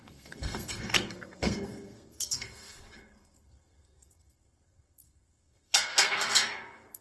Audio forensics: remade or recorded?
remade